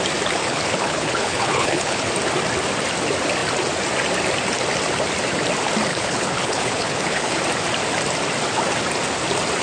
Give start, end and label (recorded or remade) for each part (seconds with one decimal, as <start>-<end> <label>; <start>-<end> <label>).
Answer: 0.0-0.4 recorded; 0.4-2.1 remade; 2.1-5.9 recorded; 5.9-7.4 remade; 7.4-9.6 recorded